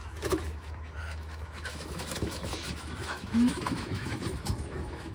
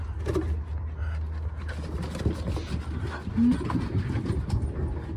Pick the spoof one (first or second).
first